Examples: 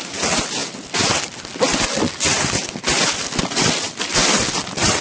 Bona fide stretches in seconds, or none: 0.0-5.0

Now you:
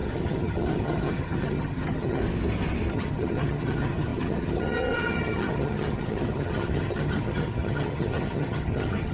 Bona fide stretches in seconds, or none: 2.2-2.9

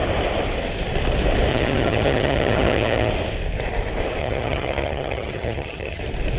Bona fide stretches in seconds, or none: 0.0-1.5; 3.1-4.2; 6.0-6.4

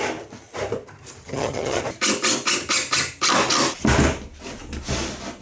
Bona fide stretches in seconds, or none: 0.0-1.2; 1.8-5.4